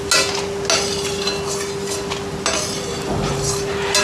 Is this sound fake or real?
real